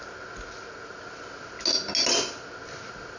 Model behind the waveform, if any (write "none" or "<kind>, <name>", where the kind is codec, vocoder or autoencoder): none